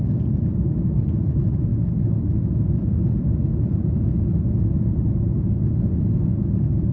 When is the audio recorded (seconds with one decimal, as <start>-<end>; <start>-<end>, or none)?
0.0-6.9